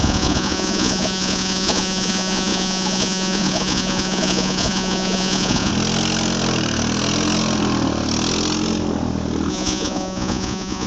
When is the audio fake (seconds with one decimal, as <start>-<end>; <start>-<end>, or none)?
0.0-5.7; 9.5-10.9